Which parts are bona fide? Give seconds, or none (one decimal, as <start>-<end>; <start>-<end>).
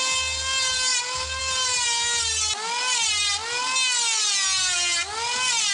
0.0-5.7